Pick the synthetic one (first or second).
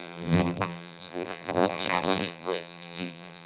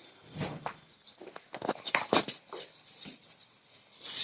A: first